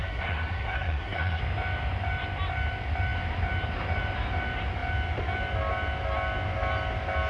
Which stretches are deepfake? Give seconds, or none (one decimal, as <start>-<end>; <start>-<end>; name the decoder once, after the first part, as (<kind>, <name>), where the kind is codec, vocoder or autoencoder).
0.0-1.4 (codec, SNAC)